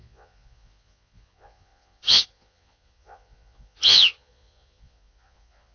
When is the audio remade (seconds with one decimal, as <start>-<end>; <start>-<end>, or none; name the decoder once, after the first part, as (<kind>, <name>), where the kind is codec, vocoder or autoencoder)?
0.0-5.7 (vocoder, Vocos)

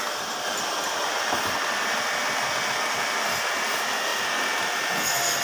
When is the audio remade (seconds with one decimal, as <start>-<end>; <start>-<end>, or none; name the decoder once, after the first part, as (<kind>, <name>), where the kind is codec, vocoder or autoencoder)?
none

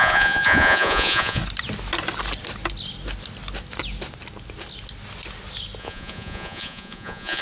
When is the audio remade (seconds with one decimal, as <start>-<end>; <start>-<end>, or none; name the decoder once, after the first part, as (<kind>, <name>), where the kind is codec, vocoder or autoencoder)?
0.0-1.4 (vocoder, Vocos); 5.8-7.4

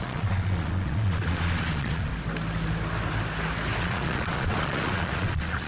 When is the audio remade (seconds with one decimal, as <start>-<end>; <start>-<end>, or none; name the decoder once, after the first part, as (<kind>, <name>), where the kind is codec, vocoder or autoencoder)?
0.0-2.1 (vocoder, Vocos); 3.8-5.7

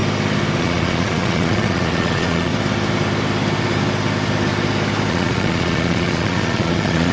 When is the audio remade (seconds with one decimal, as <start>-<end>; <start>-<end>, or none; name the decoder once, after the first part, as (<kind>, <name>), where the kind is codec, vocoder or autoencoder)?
0.6-2.5 (vocoder, Vocos); 5.1-7.1

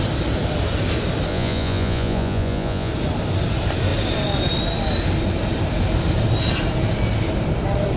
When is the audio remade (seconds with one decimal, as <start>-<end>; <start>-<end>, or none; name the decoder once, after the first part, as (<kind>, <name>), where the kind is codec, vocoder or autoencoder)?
1.3-2.9 (vocoder, Vocos)

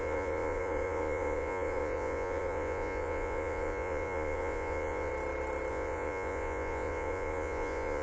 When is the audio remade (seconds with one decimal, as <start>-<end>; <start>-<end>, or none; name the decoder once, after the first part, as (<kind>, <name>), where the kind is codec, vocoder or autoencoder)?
0.0-5.1 (vocoder, Vocos); 5.7-8.0